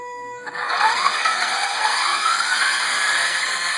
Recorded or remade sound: remade